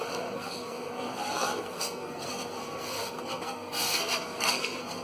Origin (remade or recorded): remade